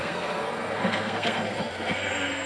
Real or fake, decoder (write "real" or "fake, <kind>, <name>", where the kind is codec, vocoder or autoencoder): fake, codec, SNAC